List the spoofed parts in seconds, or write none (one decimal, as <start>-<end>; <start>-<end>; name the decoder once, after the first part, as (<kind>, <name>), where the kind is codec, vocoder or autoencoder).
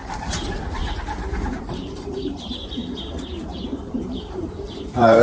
0.0-0.8 (vocoder, BigVGAN v2); 1.6-2.8; 3.9-5.2